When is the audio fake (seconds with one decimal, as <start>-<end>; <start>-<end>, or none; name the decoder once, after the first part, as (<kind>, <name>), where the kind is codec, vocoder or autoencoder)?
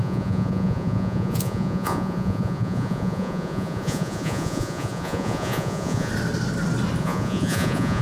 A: 0.0-6.1 (vocoder, Vocos); 7.0-8.0